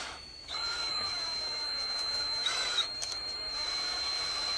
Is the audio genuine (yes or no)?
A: no